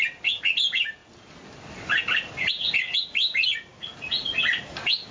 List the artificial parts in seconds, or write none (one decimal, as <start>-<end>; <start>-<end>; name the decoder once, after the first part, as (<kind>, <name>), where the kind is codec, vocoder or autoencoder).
none